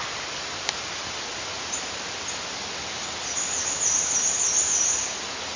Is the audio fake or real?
real